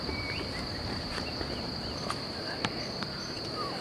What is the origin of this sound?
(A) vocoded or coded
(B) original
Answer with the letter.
A